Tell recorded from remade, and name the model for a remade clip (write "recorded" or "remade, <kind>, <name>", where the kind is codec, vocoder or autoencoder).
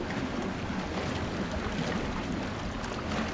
recorded